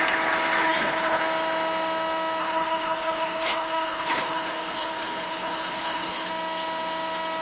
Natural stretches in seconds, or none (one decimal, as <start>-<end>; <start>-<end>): 0.0-0.6; 1.2-2.4; 6.3-7.4